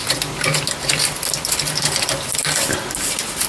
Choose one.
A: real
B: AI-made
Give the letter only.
A